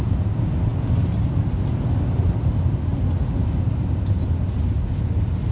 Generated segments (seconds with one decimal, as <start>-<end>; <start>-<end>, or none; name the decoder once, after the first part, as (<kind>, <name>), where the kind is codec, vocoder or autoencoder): none